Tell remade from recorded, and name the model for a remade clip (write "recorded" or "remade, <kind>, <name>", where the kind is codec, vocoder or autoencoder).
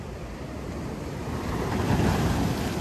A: recorded